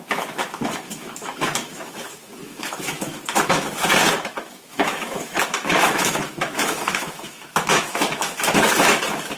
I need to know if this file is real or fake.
fake